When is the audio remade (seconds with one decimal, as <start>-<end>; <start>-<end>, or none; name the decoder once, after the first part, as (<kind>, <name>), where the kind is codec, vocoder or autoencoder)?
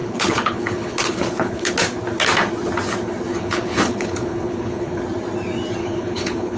0.0-1.7 (codec, HILCodec); 3.3-5.0; 5.8-6.6